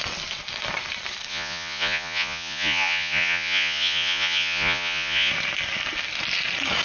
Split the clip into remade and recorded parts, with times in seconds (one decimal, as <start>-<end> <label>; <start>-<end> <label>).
0.0-1.3 recorded; 1.3-5.3 remade; 5.3-6.8 recorded